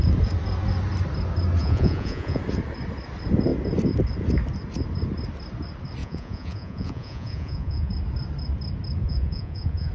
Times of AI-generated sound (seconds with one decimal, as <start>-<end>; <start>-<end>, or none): 1.6-2.4; 6.0-7.9; 9.0-9.9